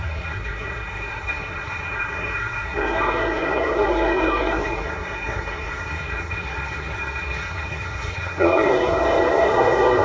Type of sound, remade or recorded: remade